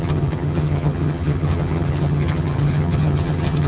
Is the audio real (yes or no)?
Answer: no